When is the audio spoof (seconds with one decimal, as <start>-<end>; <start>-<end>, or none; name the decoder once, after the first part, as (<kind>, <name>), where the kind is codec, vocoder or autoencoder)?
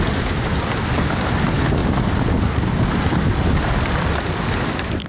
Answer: 1.8-5.1 (vocoder, BigVGAN v2)